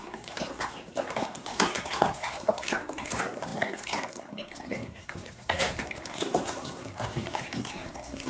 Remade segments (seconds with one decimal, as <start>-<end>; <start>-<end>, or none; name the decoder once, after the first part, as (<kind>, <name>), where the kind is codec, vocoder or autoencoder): 0.0-8.3 (codec, SNAC)